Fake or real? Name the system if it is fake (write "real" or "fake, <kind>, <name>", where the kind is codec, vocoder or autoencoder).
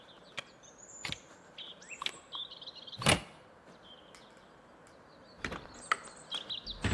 real